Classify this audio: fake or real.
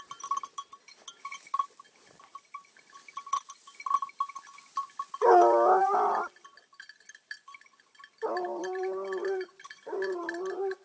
fake